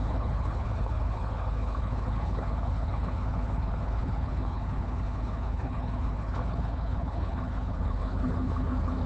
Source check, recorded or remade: remade